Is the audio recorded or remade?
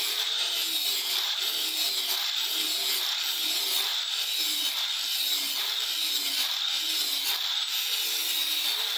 remade